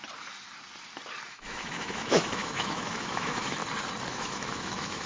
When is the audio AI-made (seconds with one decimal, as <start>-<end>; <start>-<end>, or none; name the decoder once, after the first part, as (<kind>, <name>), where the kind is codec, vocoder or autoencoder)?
1.3-3.6 (autoencoder, DAC-VAE); 4.1-5.1